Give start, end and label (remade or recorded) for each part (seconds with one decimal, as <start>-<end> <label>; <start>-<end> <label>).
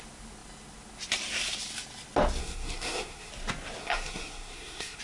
0.0-2.4 recorded; 2.4-3.3 remade; 3.3-3.8 recorded; 3.8-5.0 remade